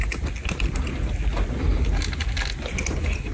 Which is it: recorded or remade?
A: recorded